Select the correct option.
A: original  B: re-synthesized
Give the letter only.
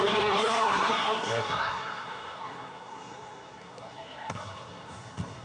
B